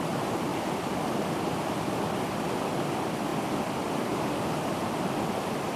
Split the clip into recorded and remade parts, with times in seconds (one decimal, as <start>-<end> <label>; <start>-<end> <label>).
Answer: 0.0-0.5 recorded; 0.5-2.0 remade; 2.0-3.3 recorded; 3.3-4.3 remade; 4.3-4.8 recorded; 4.8-5.3 remade; 5.3-5.8 recorded